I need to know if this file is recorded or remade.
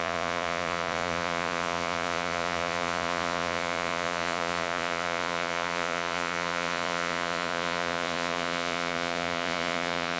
remade